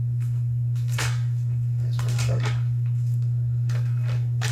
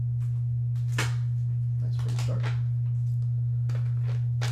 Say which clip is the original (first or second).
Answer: second